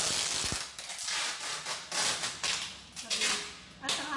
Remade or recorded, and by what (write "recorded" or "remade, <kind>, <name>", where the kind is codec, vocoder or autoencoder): recorded